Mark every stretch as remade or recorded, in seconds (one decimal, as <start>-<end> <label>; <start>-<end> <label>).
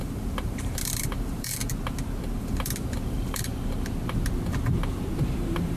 0.0-1.6 remade; 1.6-2.4 recorded; 2.4-3.5 remade; 3.5-5.1 recorded; 5.1-5.8 remade